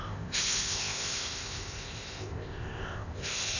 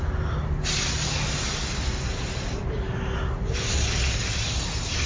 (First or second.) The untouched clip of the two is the second